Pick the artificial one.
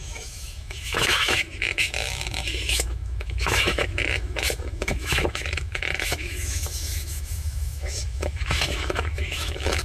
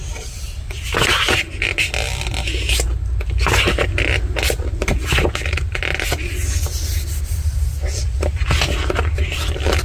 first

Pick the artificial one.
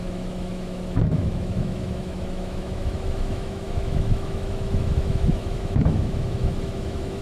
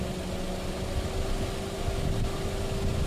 first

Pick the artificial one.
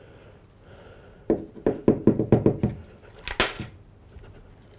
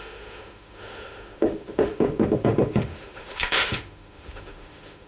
second